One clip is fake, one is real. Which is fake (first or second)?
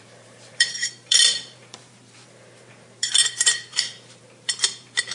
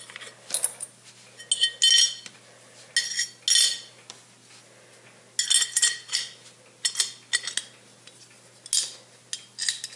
first